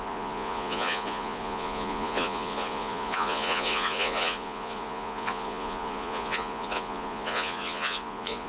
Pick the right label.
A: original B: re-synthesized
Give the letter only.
B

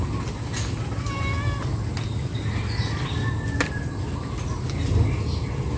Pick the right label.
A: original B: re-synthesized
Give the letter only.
A